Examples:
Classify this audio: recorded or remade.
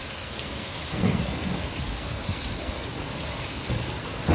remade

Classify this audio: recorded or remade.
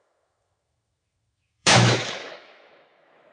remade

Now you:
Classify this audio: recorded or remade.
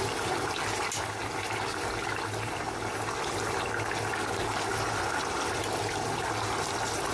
recorded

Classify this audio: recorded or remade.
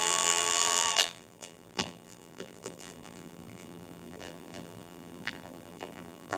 remade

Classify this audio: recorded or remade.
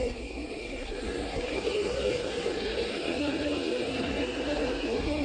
remade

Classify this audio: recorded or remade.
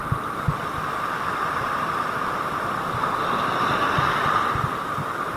recorded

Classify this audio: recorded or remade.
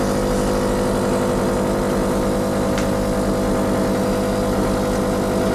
recorded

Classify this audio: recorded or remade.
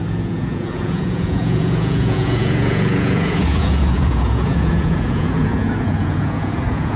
remade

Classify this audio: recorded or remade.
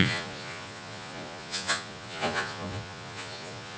remade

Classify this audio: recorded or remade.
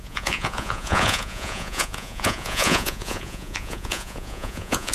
remade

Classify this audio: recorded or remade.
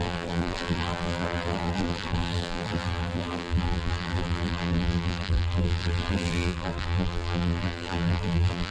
remade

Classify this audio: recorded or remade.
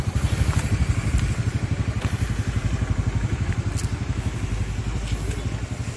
recorded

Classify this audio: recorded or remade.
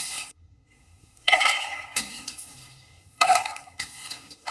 remade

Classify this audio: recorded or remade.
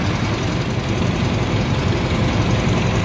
recorded